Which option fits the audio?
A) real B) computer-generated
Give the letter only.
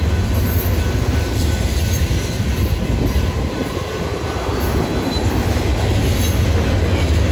A